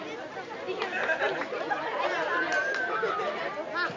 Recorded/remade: recorded